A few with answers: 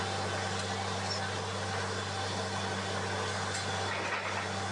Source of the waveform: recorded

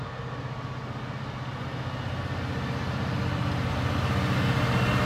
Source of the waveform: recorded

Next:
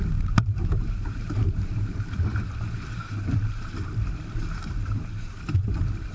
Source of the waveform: remade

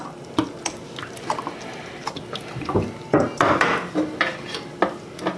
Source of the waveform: recorded